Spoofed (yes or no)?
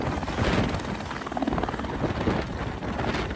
no